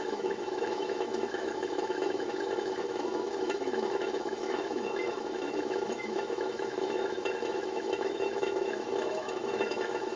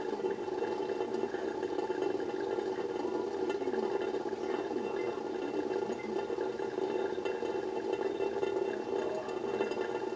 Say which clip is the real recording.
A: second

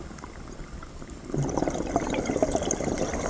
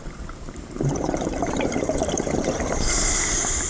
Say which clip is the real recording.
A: first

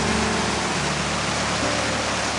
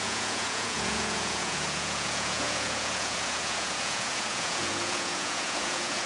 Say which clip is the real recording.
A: first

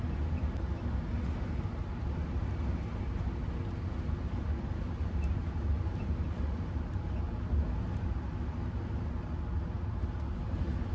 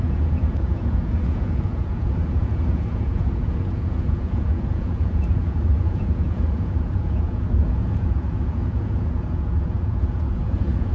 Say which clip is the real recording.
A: first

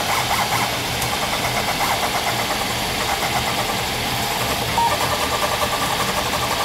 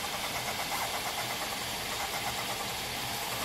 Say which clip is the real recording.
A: first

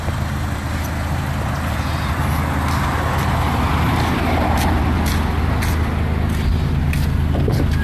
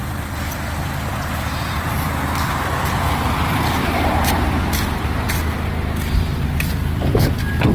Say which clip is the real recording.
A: first